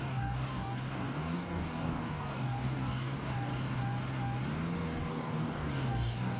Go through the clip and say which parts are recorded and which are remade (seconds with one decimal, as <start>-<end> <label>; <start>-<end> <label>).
0.0-3.5 remade; 3.5-5.1 recorded; 5.1-6.4 remade